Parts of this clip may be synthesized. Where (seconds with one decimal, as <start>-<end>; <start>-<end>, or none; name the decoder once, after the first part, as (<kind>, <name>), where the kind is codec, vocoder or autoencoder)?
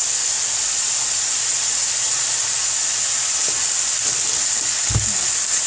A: 2.0-2.6 (vocoder, Vocos)